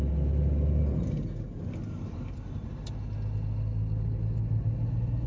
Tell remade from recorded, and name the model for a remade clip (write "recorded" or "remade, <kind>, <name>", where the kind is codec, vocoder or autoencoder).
recorded